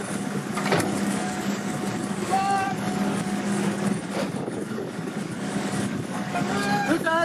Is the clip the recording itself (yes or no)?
no